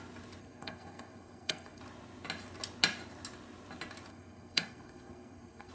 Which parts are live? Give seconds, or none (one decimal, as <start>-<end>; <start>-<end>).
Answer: 0.0-0.4; 1.8-4.1